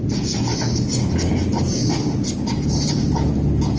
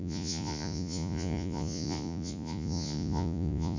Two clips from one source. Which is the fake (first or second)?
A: second